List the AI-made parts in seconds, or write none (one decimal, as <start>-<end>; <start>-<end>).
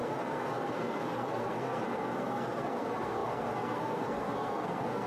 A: 0.0-5.1